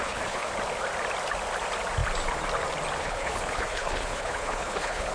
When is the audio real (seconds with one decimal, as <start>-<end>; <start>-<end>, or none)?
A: 0.5-3.0